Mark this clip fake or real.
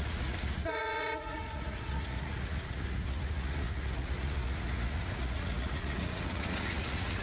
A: fake